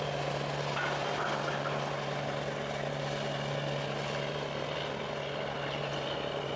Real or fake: real